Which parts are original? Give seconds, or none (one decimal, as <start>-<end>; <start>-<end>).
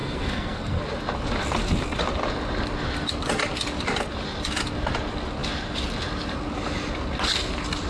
0.8-7.9